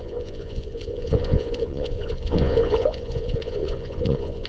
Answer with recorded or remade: remade